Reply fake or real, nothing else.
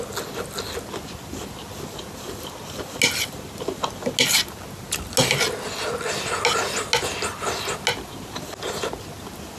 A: real